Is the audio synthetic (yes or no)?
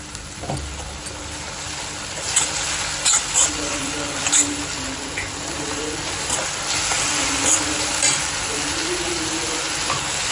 no